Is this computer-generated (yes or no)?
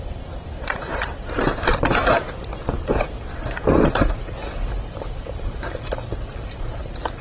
yes